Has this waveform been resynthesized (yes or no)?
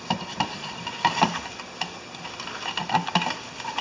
no